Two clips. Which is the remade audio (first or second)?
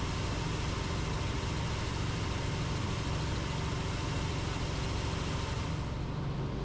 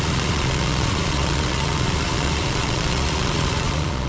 second